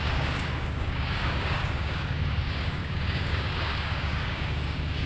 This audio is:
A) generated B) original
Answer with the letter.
A